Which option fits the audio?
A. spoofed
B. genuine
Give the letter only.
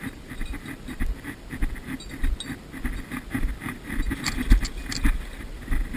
B